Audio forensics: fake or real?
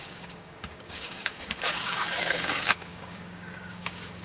fake